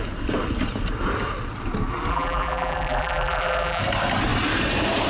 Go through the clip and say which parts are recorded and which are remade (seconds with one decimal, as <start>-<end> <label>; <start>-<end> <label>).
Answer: 0.0-2.1 recorded; 2.1-3.8 remade; 3.8-5.1 recorded